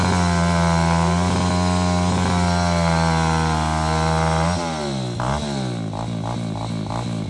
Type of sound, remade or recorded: recorded